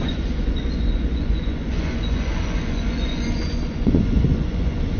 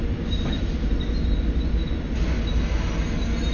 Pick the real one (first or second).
second